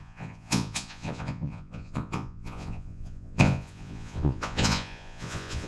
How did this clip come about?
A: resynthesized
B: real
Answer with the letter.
A